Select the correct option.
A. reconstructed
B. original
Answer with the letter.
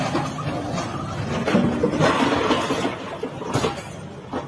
B